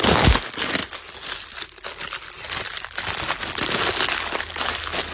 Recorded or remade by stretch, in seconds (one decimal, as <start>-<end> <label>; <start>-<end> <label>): 0.0-5.1 recorded